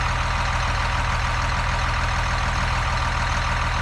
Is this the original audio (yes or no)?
yes